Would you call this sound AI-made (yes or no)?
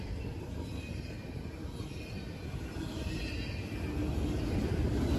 no